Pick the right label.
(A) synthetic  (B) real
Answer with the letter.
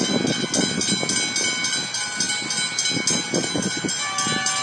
B